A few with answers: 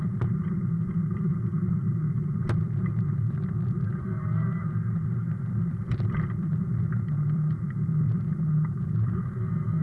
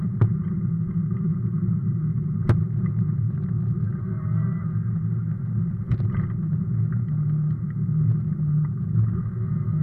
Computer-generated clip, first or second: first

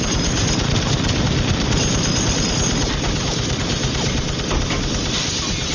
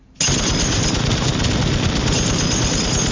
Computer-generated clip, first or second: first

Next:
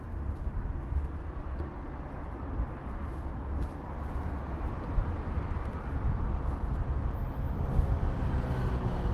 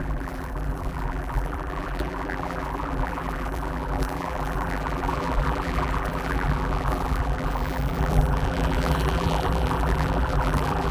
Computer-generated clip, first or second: second